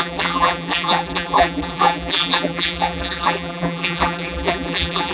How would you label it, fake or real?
fake